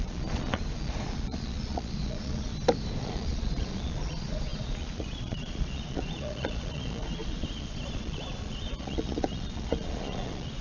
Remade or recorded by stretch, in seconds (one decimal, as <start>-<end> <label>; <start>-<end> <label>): 0.0-2.5 remade; 2.5-3.0 recorded; 3.0-10.6 remade